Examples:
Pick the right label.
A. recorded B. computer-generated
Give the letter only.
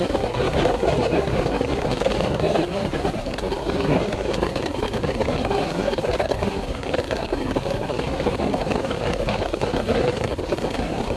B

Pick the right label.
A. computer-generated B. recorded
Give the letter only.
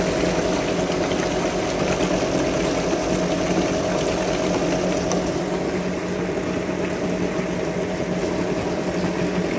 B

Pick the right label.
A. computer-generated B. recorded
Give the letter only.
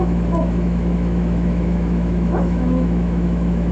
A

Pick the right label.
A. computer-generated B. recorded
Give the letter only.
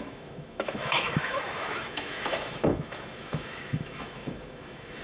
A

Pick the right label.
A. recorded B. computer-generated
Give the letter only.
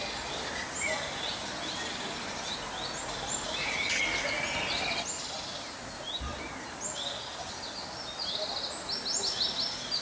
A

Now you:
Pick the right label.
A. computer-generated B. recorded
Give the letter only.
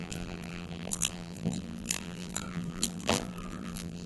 A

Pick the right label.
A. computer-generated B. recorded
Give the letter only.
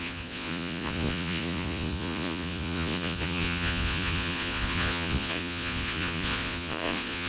A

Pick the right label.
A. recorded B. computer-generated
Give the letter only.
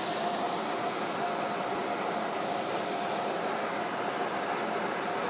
A